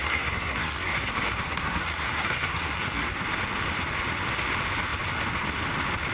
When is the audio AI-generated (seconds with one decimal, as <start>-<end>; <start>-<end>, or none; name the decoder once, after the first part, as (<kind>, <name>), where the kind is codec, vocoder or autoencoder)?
0.0-3.2 (codec, SNAC)